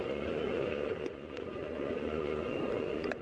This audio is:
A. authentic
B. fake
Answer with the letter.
B